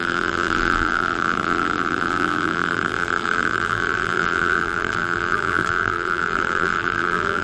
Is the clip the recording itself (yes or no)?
no